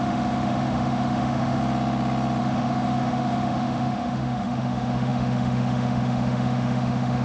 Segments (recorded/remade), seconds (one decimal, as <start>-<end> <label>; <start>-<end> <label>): 0.0-1.6 remade; 1.6-2.4 recorded; 2.4-7.2 remade